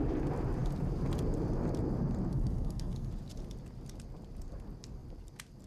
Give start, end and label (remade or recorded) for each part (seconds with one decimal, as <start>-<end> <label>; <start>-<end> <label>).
0.0-2.3 recorded; 2.3-3.1 remade; 3.1-5.7 recorded